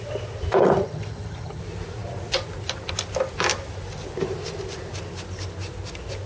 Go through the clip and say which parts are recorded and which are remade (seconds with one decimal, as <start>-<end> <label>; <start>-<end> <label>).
0.0-0.8 recorded; 0.8-1.6 remade; 1.6-6.3 recorded